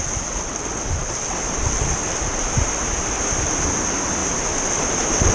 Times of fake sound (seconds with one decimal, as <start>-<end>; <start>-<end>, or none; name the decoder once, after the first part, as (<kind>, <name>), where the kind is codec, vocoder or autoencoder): none

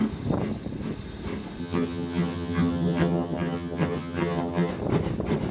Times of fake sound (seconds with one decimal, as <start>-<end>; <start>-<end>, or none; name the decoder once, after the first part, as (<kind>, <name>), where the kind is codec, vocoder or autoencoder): 1.6-4.7 (vocoder, HiFi-GAN)

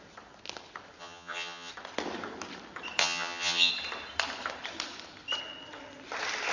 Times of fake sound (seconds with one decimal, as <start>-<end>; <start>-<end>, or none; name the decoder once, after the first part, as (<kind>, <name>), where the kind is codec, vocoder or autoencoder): 1.0-1.7 (vocoder, HiFi-GAN); 3.0-3.7

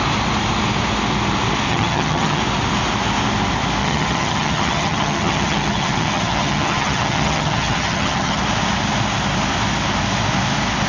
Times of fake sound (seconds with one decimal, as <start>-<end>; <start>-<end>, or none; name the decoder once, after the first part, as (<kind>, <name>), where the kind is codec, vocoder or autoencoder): 1.7-2.4 (vocoder, HiFi-GAN); 3.8-8.4